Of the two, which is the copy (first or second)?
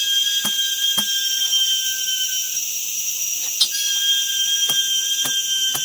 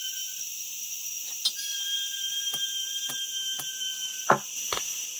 second